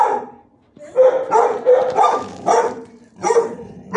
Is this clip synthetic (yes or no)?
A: yes